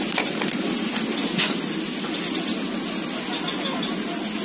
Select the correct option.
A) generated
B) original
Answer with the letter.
B